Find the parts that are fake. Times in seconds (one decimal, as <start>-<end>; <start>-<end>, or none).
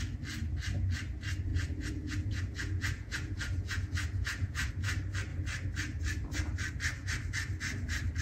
1.5-4.7